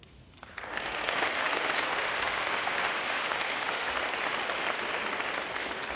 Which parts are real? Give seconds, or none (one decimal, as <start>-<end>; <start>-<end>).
0.0-0.7; 3.9-6.0